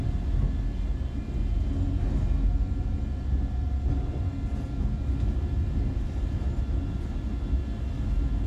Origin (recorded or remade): recorded